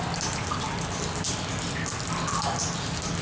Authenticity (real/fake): real